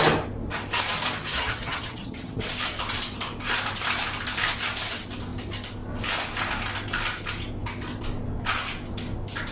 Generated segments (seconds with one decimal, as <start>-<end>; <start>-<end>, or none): 1.3-2.4